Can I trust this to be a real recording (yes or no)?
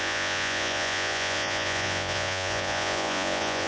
no